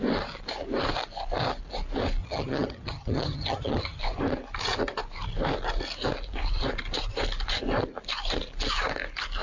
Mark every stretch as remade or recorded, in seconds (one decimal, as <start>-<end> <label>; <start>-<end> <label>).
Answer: 0.0-2.2 recorded; 2.2-4.0 remade; 4.0-9.4 recorded